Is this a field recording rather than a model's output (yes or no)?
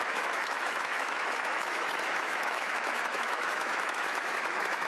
no